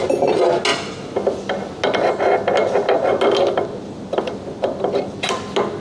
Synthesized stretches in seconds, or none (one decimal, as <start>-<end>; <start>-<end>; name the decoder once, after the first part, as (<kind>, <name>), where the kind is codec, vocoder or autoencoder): none